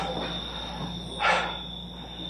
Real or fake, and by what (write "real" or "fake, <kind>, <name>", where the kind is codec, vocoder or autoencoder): real